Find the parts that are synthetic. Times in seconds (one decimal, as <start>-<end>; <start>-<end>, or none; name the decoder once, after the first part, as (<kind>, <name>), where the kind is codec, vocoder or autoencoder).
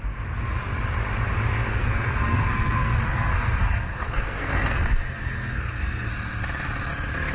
1.7-6.1 (codec, SNAC)